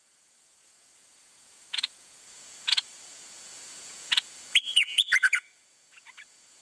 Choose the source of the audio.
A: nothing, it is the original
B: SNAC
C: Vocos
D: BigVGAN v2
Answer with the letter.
C